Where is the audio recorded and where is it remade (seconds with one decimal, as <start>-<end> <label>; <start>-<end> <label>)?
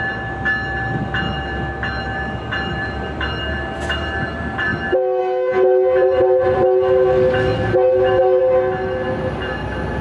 0.0-10.0 recorded